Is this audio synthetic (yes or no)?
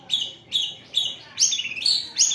yes